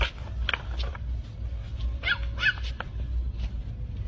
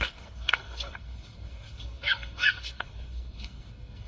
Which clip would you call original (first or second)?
first